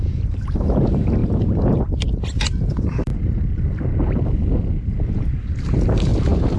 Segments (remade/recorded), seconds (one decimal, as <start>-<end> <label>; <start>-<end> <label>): 0.0-1.2 remade; 1.2-2.5 recorded; 2.5-6.1 remade; 6.1-6.6 recorded